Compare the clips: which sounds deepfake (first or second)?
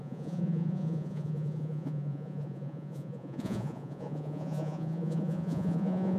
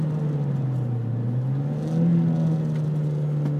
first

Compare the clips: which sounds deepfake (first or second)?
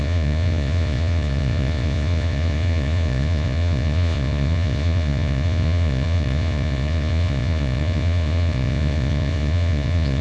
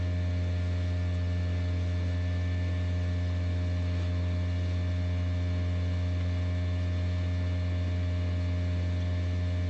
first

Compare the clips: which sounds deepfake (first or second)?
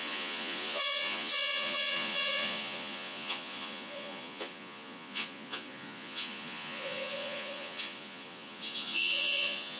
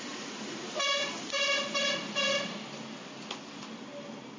first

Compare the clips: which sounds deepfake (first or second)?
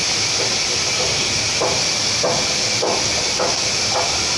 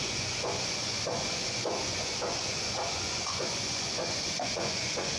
second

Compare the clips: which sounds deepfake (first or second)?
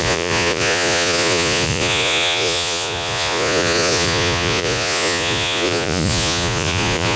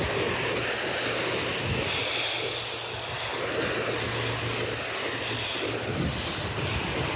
first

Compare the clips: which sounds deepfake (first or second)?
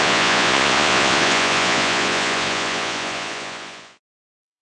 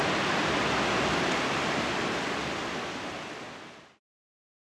first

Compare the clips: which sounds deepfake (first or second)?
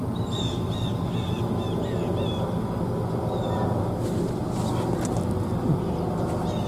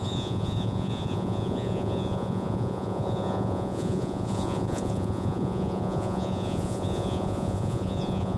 second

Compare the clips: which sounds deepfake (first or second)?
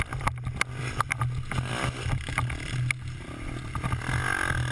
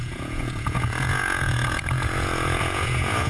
second